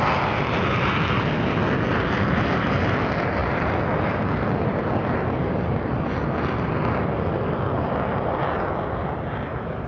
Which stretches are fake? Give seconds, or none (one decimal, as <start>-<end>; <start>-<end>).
none